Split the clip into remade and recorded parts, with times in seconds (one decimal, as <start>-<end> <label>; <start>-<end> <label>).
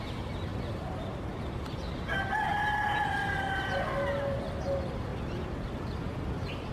0.0-0.5 remade; 0.5-4.5 recorded; 4.5-5.1 remade; 5.1-6.7 recorded